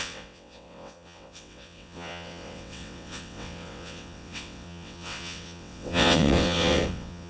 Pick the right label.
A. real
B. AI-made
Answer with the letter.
B